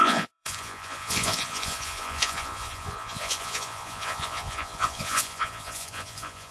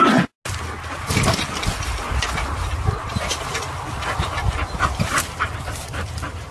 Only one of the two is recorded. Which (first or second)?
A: second